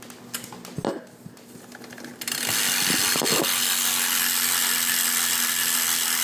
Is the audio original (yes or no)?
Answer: yes